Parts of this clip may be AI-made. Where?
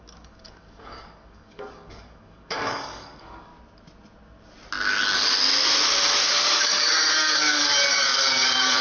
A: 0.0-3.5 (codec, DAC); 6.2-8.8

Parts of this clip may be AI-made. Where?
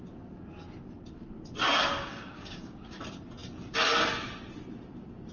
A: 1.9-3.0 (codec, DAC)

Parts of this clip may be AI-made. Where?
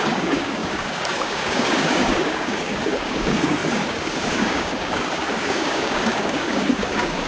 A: 0.0-7.3 (codec, DAC)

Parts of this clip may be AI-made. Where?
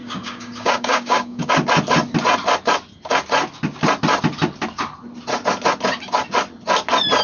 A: 0.0-1.5 (codec, DAC)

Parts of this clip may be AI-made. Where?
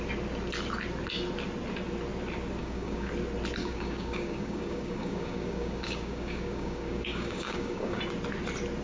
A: 2.6-3.1 (codec, DAC); 3.6-8.0